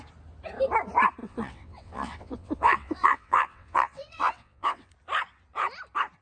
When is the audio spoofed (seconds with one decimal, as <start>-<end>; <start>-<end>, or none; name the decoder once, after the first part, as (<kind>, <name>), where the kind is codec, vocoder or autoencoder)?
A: 1.2-4.9 (vocoder, WaveNeXt)

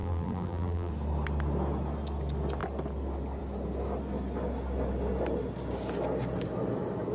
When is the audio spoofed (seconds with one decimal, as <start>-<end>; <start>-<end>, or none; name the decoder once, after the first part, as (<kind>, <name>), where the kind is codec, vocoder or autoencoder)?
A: 0.0-0.9 (vocoder, BigVGAN v2)

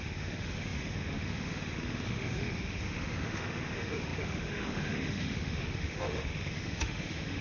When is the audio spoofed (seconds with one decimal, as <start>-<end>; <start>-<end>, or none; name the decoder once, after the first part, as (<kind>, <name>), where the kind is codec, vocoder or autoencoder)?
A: 0.0-7.4 (autoencoder, DAC-VAE)

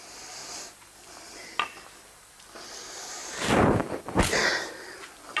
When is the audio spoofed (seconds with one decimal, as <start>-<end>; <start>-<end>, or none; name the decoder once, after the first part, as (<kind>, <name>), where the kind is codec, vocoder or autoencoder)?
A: 0.0-0.4 (vocoder, BigVGAN v2); 2.3-3.2; 3.9-5.4

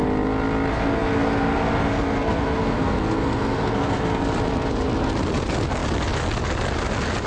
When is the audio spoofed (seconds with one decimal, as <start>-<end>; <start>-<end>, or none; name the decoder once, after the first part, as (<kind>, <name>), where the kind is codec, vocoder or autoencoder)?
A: 0.7-4.2 (codec, SNAC)